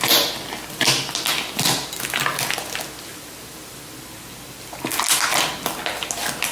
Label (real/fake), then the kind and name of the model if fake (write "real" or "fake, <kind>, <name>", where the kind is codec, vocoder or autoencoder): real